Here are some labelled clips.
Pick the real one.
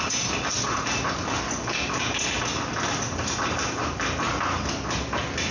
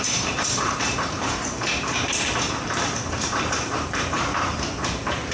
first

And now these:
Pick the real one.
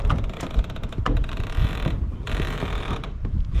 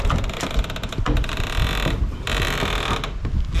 second